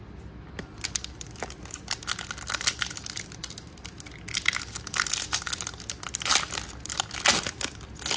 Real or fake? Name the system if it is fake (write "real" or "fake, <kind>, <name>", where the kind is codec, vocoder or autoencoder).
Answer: real